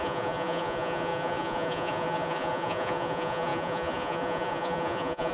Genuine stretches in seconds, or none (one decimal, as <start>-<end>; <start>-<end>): none